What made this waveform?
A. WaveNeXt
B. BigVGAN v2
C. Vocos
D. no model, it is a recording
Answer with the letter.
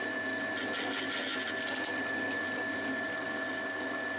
D